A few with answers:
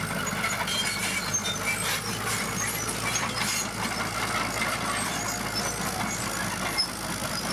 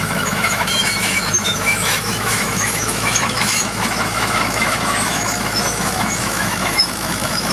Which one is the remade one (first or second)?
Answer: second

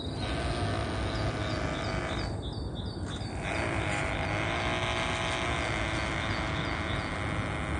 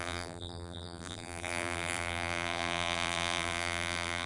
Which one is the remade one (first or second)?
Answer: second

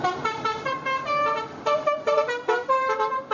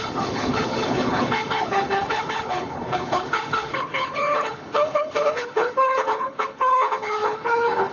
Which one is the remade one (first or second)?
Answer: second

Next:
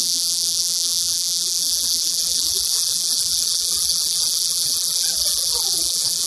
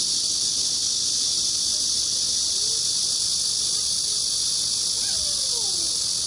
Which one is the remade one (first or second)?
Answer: first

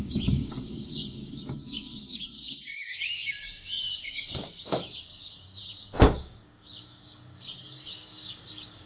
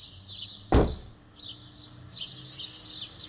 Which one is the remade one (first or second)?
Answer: first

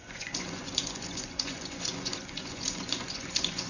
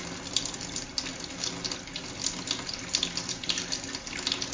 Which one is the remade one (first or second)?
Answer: first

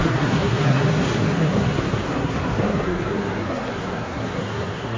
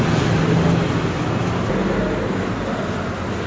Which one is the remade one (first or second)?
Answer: first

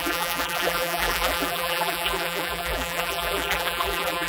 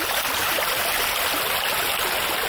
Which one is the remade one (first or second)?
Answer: first